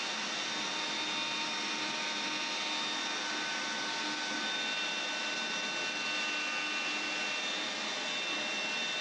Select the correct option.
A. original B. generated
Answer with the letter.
A